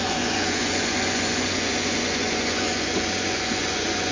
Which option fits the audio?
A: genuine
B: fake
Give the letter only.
B